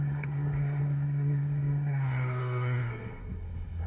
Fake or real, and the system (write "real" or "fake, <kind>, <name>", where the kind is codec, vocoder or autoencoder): fake, codec, SNAC